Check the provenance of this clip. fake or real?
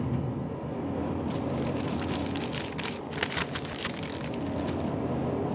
real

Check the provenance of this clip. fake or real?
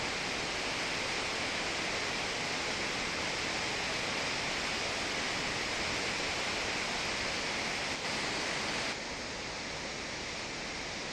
real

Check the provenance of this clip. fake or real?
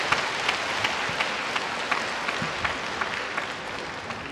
real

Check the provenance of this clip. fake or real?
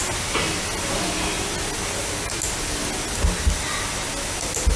real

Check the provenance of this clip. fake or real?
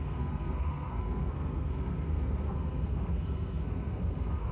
fake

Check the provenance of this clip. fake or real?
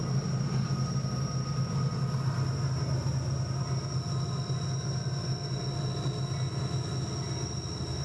real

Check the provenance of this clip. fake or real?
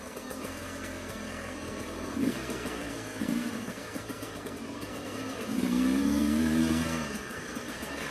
fake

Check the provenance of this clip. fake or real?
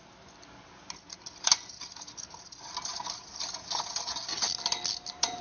real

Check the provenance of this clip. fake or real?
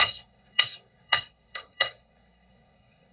fake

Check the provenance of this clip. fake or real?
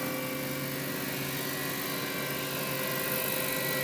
real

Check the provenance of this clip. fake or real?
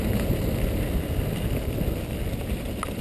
real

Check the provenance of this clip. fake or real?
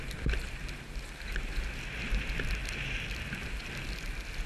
real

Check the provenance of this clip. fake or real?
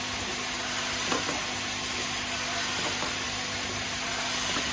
real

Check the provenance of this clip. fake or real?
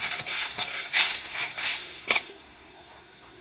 fake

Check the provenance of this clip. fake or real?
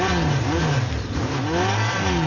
real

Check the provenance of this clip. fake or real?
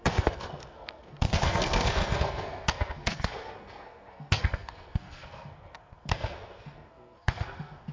fake